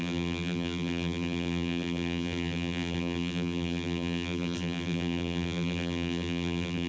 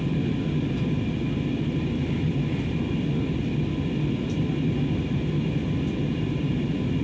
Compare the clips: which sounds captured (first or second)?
second